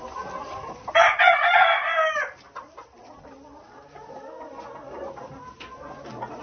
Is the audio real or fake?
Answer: real